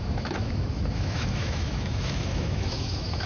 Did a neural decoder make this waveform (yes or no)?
yes